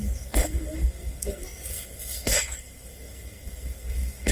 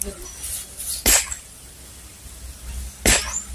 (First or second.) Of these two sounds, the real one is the second